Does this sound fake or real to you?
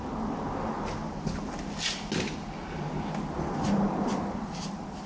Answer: real